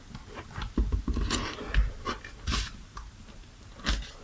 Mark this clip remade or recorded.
recorded